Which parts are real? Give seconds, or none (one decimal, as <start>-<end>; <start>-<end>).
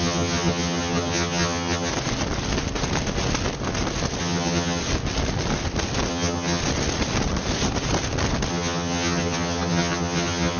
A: 1.9-4.2; 4.8-6.1; 6.6-8.5